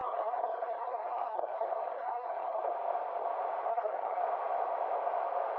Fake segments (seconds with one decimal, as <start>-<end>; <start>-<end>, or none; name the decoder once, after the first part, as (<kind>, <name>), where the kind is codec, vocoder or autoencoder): 0.0-2.6 (codec, SNAC); 3.7-4.2